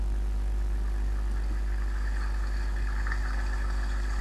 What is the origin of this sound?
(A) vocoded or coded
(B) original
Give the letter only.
B